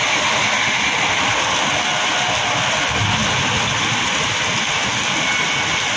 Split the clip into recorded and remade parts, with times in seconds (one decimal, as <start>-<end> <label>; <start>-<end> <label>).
0.0-6.0 recorded

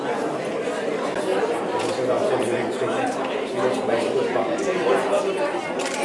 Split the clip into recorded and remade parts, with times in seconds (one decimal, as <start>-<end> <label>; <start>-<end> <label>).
0.0-6.0 recorded

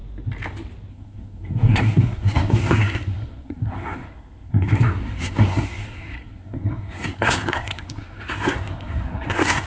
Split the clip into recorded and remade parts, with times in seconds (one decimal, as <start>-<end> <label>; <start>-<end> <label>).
0.0-0.9 recorded; 0.9-9.7 remade

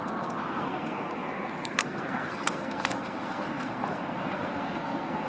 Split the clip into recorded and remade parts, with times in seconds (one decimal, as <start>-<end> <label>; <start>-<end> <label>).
0.0-5.3 remade

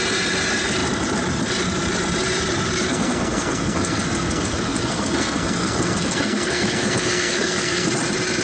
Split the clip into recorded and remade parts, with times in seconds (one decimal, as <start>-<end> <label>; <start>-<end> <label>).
0.0-2.9 recorded; 2.9-7.9 remade; 7.9-8.4 recorded